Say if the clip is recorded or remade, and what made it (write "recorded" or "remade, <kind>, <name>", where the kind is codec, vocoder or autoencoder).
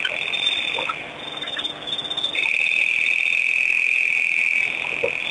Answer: recorded